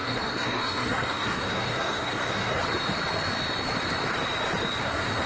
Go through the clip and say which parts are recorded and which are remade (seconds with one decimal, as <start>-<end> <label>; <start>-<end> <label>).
0.0-2.6 remade; 2.6-4.8 recorded; 4.8-5.3 remade